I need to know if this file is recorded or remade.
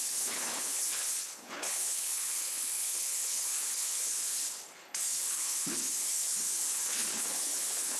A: remade